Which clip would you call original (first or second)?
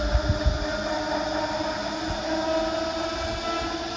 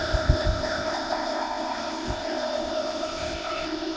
first